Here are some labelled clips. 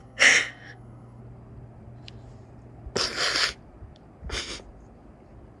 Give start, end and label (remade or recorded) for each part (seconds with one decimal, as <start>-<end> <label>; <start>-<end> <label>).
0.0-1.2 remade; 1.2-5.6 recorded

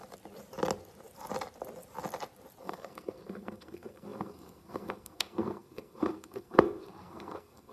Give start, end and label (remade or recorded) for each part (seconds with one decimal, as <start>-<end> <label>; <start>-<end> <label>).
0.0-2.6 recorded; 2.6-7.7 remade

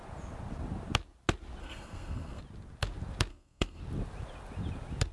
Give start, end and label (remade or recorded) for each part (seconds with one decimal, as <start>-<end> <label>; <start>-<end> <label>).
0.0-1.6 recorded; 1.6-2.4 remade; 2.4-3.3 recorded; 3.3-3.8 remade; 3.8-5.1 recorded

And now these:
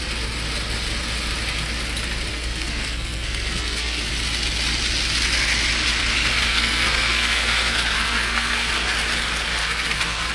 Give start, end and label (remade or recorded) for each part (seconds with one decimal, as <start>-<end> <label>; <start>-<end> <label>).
0.0-2.3 recorded; 2.3-4.1 remade; 4.1-6.5 recorded; 6.5-8.7 remade; 8.7-9.6 recorded; 9.6-10.3 remade

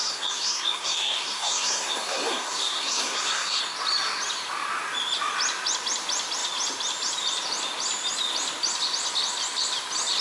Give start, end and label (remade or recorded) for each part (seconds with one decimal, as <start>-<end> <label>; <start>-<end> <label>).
0.0-3.6 remade; 3.6-10.2 recorded